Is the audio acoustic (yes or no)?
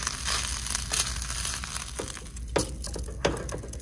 yes